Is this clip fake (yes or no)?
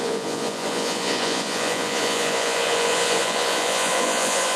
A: yes